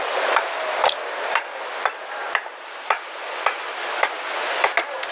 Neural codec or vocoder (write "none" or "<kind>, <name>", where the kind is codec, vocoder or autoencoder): none